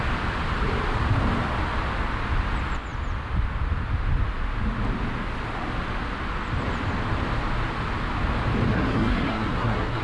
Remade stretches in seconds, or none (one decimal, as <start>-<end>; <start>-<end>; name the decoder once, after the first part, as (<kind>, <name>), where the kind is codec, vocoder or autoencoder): 8.7-10.0 (codec, SNAC)